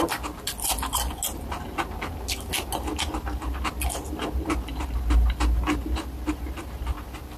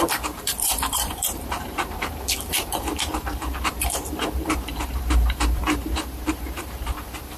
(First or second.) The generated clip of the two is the second